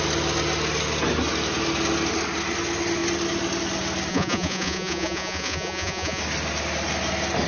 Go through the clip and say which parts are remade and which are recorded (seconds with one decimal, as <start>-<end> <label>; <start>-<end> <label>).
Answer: 0.0-4.1 recorded; 4.1-6.2 remade; 6.2-7.5 recorded